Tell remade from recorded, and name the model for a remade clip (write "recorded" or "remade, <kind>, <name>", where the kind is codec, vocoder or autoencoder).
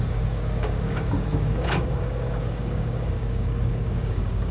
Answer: remade, codec, DAC